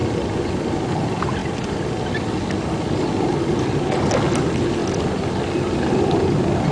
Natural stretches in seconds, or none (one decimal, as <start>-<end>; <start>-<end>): 0.0-6.7